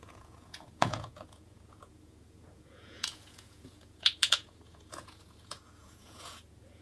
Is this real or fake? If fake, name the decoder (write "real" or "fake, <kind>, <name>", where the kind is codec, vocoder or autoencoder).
fake, vocoder, Vocos